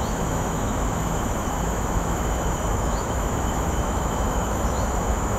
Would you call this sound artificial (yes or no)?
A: yes